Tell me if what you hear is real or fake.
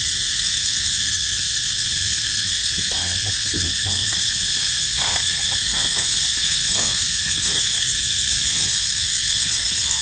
fake